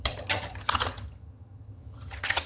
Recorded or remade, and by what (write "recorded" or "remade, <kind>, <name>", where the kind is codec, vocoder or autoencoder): remade, vocoder, HiFi-GAN